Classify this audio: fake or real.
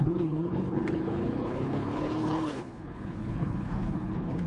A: fake